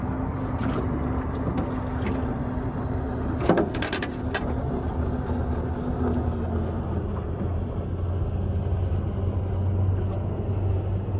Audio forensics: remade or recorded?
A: recorded